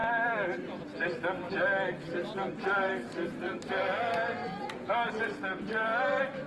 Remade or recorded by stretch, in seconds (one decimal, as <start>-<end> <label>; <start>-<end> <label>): 0.0-6.5 recorded